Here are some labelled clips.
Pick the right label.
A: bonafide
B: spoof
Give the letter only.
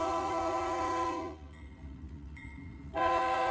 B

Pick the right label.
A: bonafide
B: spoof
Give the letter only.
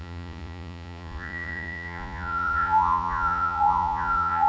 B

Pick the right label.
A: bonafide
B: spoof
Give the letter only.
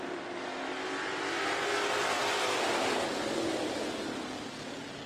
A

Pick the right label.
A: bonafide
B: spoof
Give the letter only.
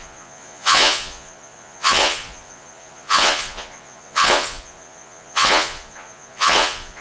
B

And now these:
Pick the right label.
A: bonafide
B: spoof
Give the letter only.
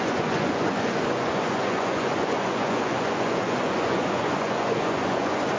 B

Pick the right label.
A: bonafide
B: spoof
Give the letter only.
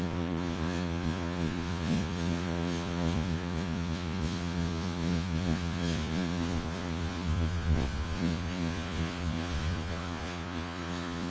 B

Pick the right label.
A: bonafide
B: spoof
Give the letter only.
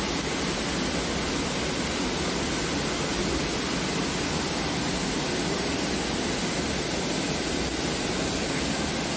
A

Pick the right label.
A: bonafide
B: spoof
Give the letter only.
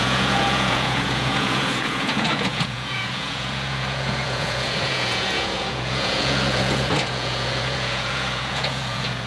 B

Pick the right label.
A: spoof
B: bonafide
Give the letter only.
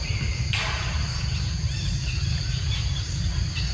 B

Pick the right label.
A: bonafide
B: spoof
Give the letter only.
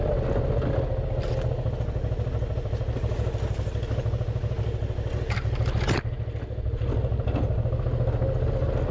A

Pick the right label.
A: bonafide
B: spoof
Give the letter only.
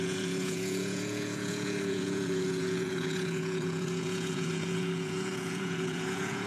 B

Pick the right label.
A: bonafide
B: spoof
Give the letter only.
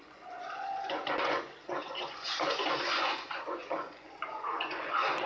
B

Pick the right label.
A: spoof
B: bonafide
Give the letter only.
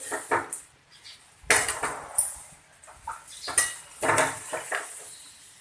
B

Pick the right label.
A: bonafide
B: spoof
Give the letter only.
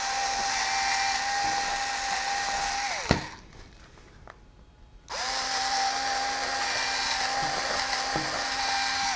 A